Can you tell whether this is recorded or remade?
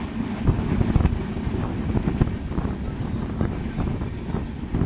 recorded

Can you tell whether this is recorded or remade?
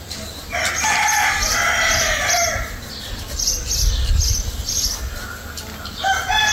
recorded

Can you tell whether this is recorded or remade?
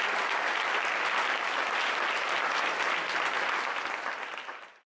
recorded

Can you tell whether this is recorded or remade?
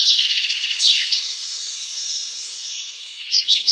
remade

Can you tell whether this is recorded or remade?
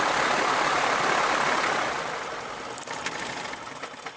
recorded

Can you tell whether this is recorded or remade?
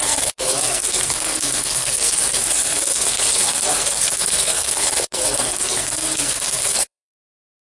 remade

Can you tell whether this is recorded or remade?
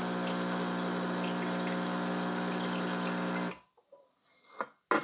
recorded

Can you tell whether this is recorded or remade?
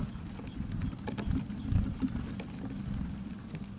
recorded